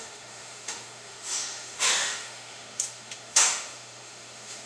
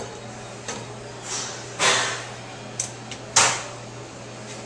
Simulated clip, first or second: first